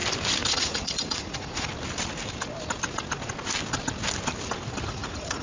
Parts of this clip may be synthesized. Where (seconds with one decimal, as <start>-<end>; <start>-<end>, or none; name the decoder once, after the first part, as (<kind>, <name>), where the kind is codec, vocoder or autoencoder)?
0.5-1.7 (vocoder, Vocos); 4.9-5.4